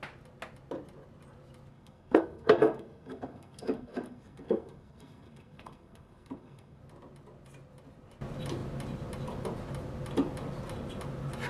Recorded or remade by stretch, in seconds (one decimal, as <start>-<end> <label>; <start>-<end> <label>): 0.0-1.7 recorded; 1.7-6.8 remade; 6.8-11.5 recorded